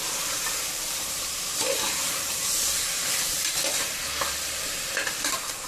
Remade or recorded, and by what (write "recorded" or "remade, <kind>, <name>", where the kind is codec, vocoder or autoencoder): remade, vocoder, BigVGAN v2